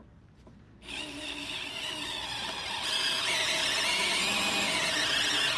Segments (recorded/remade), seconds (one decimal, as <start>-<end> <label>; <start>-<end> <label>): 0.0-5.6 recorded